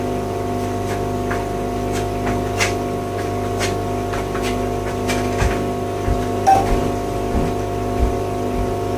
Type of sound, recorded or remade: recorded